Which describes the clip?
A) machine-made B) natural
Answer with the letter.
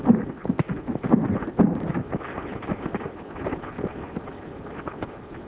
B